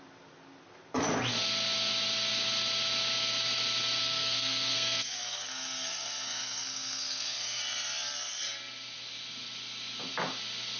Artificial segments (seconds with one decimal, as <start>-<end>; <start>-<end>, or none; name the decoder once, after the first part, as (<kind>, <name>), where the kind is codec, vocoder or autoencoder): 4.0-7.6 (codec, SNAC)